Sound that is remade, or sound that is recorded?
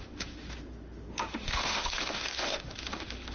remade